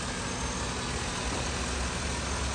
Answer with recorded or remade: recorded